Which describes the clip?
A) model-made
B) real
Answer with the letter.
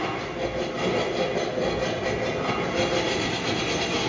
B